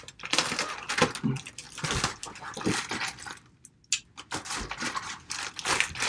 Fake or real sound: real